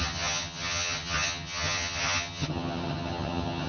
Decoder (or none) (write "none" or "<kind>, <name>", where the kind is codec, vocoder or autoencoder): vocoder, HiFi-GAN